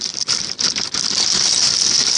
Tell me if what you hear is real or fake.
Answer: real